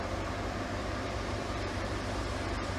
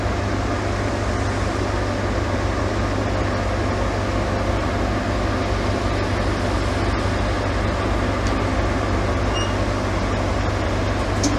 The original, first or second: second